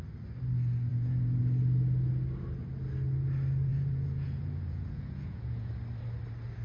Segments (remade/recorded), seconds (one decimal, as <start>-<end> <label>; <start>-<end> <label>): 0.0-0.9 recorded; 0.9-1.4 remade; 1.4-3.7 recorded; 3.7-5.7 remade; 5.7-6.6 recorded